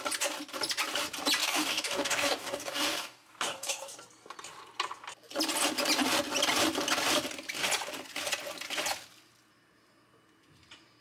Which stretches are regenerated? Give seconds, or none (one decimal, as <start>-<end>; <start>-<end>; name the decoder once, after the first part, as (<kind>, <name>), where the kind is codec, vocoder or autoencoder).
1.4-4.0 (codec, DAC)